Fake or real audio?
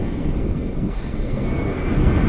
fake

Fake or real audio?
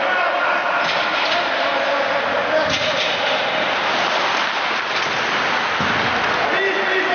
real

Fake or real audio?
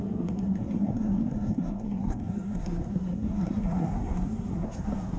fake